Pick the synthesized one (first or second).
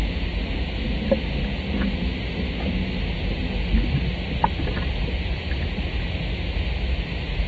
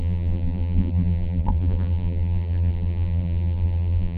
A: second